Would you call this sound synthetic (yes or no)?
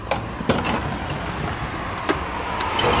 no